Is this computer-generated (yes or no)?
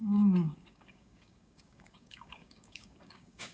yes